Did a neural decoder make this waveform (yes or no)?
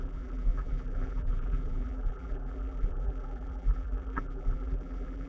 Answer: yes